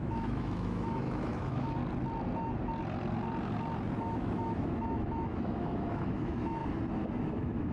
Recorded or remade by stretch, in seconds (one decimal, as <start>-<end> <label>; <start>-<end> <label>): 0.0-1.8 remade; 1.8-4.0 recorded; 4.0-6.6 remade; 6.6-7.2 recorded; 7.2-7.7 remade